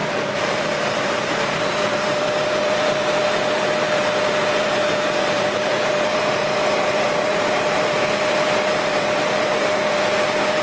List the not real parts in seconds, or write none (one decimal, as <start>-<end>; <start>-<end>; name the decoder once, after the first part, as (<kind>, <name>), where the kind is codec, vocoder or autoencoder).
0.0-10.6 (vocoder, BigVGAN v2)